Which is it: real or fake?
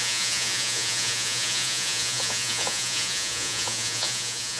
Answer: fake